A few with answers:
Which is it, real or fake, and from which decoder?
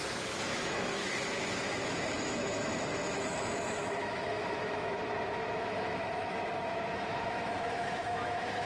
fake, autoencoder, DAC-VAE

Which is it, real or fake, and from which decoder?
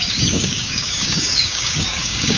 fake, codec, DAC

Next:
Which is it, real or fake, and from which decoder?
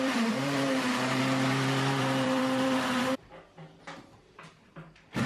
fake, vocoder, BigVGAN v2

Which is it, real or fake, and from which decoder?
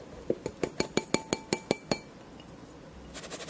real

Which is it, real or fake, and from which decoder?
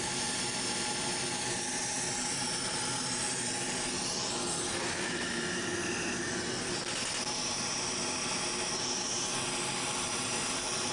real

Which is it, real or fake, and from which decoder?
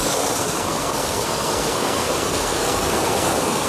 fake, codec, SNAC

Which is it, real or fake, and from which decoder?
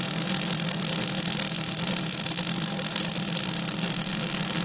fake, vocoder, BigVGAN v2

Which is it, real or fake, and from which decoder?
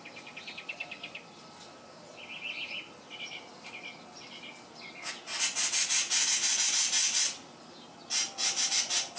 real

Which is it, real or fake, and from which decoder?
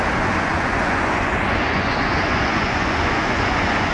fake, vocoder, Vocos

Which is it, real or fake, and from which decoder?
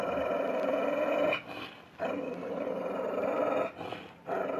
real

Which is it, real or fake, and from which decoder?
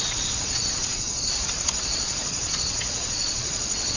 fake, vocoder, Vocos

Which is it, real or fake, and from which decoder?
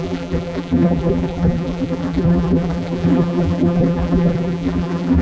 fake, vocoder, BigVGAN v2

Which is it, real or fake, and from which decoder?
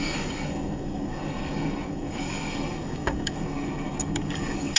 fake, codec, DAC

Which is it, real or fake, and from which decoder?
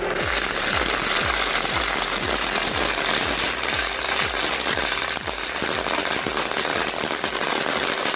real